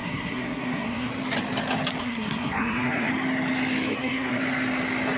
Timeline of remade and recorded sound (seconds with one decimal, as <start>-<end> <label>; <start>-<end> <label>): 0.0-1.1 remade; 1.1-2.0 recorded; 2.0-3.1 remade; 3.1-3.9 recorded; 3.9-4.4 remade; 4.4-5.2 recorded